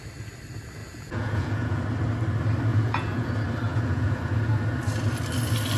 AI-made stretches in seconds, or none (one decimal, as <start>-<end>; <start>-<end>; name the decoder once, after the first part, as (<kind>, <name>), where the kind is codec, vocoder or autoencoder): 0.8-1.8 (vocoder, Vocos); 2.7-3.3; 3.7-4.2